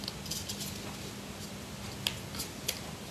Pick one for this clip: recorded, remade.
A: recorded